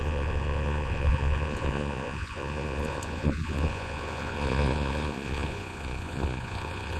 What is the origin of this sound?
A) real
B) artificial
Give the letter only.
B